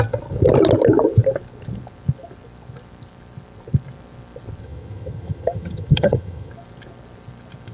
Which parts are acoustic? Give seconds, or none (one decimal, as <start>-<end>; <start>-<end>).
0.0-4.6; 6.5-7.7